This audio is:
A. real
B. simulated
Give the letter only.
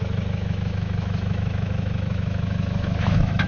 B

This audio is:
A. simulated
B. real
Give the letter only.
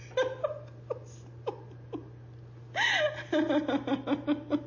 B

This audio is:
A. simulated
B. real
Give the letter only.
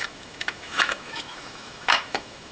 A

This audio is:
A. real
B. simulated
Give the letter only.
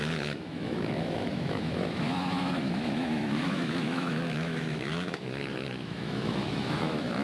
B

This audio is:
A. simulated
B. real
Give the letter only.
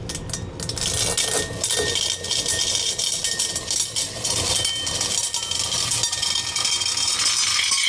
B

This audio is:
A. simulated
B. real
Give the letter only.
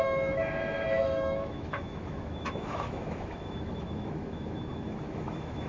A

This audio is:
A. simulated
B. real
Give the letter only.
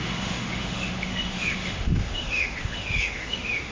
A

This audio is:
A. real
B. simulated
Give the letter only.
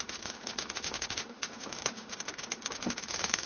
B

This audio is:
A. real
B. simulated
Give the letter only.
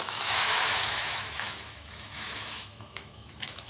B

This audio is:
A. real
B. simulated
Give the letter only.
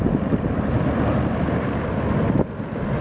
A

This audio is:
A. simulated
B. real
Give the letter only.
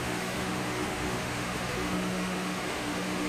A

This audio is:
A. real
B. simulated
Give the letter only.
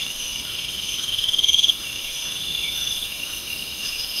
B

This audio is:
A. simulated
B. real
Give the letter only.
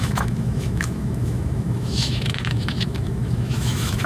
A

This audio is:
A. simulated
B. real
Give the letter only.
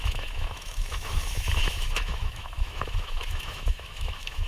A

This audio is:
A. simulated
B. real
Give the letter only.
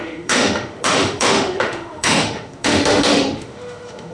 A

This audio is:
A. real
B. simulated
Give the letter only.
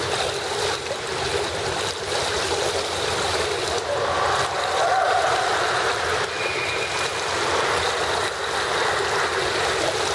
A